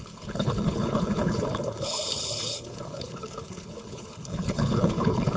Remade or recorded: remade